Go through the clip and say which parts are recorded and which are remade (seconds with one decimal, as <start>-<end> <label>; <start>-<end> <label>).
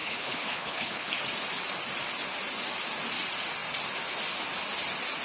0.0-1.1 remade; 1.1-5.2 recorded